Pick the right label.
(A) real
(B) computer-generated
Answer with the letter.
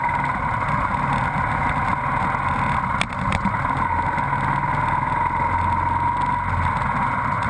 A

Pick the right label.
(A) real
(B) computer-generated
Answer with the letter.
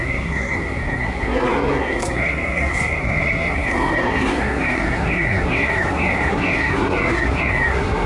B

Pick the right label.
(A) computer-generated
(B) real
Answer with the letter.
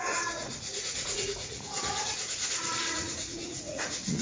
A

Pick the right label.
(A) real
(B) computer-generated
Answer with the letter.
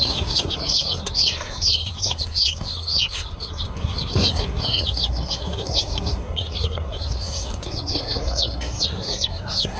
B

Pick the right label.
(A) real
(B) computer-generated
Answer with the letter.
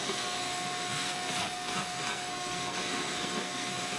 B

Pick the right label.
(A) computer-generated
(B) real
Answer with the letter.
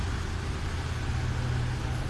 B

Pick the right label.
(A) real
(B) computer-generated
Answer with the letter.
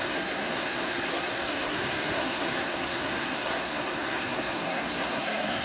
B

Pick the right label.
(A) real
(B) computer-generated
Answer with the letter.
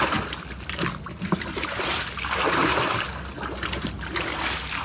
A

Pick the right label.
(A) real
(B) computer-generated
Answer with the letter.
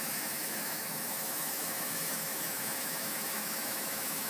B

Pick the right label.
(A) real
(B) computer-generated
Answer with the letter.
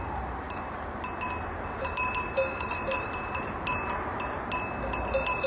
A